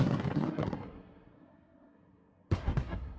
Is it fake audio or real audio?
fake